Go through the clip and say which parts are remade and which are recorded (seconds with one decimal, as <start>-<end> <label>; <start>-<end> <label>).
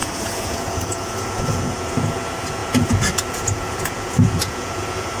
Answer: 0.0-5.2 remade